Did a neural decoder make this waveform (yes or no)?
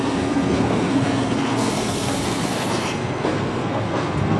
yes